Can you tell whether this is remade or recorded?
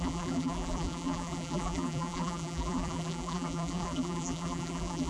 remade